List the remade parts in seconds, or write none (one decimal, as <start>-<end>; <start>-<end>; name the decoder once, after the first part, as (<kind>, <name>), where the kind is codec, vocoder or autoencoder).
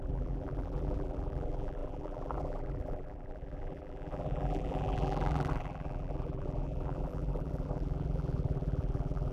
0.0-9.3 (vocoder, BigVGAN v2)